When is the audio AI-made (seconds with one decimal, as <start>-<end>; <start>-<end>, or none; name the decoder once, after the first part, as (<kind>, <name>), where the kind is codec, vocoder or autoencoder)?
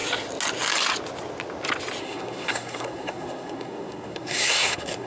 2.0-5.1 (codec, SNAC)